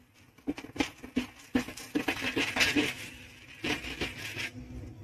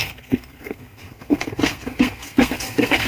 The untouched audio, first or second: first